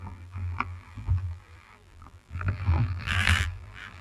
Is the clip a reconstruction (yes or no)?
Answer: yes